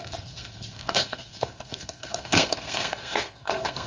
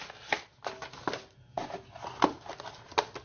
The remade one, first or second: first